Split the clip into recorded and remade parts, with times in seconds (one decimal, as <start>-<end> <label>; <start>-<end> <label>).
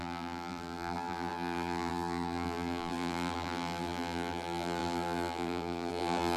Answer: 0.0-6.4 remade